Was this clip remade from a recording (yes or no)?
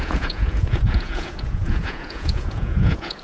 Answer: yes